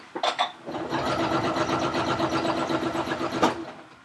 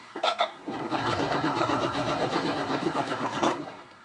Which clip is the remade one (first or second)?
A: second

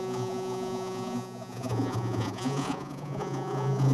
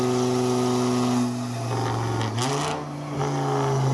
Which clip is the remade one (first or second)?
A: first